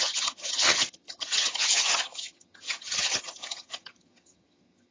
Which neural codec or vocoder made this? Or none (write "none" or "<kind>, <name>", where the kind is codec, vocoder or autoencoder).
vocoder, HiFi-GAN